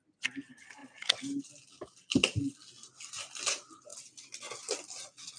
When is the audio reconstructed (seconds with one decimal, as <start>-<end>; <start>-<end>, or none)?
none